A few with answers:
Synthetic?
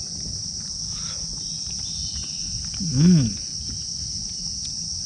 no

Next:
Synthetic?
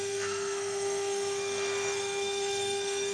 yes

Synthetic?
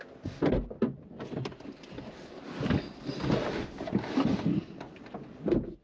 no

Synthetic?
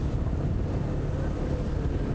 no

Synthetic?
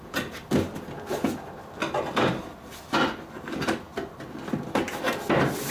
no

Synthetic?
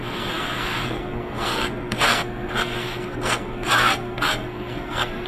yes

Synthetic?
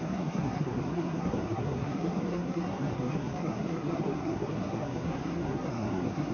yes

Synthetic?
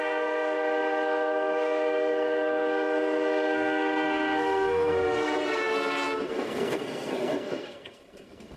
yes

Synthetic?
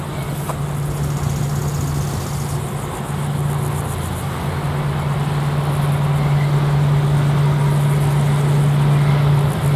no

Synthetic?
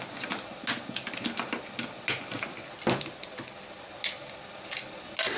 no